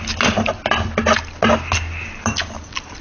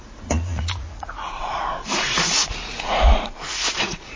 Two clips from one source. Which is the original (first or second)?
first